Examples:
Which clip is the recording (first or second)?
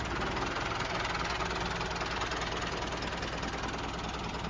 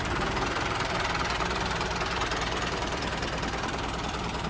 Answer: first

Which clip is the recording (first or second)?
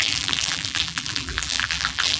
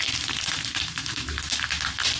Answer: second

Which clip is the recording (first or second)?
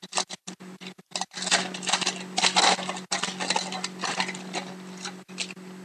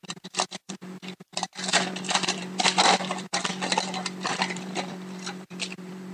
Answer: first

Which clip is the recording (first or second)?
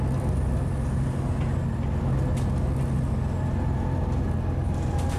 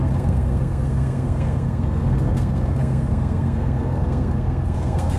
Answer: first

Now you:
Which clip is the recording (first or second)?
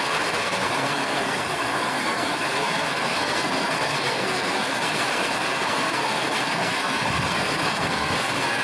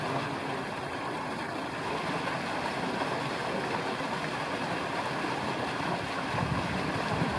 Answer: second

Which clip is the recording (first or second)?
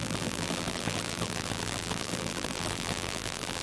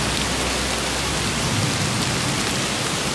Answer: second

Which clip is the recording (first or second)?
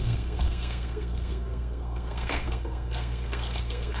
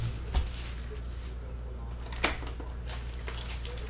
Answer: second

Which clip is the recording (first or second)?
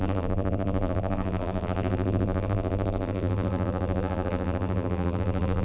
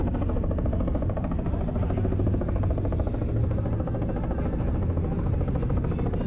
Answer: second